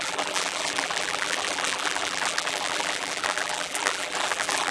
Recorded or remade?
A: remade